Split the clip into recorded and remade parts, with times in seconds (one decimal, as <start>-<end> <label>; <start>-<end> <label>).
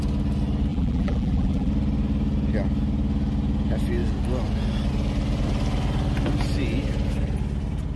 0.0-0.7 recorded; 0.7-1.7 remade; 1.7-8.0 recorded